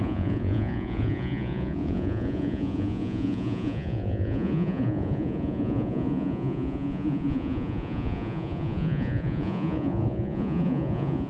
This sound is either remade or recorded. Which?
remade